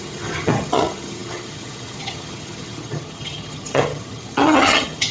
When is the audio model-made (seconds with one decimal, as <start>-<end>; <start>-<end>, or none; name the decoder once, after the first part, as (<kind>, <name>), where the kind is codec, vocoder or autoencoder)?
0.0-5.1 (vocoder, HiFi-GAN)